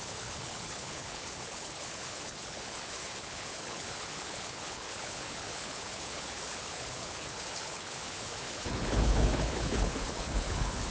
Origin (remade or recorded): remade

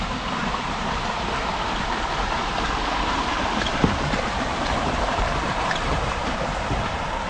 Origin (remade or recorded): remade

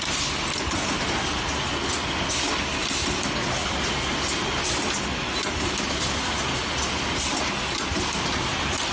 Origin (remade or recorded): recorded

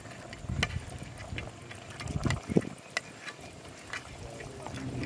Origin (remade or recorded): recorded